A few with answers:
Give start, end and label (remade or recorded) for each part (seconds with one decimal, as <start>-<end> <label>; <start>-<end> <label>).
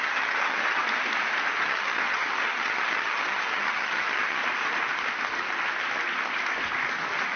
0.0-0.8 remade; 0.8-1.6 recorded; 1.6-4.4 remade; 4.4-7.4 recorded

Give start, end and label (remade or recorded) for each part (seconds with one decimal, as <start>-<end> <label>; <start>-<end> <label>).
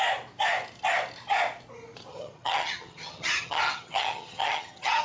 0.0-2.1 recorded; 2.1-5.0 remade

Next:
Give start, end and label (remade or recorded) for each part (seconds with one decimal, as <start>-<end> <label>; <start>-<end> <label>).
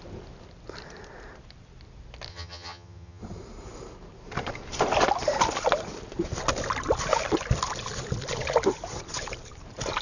0.0-2.3 recorded; 2.3-3.2 remade; 3.2-10.0 recorded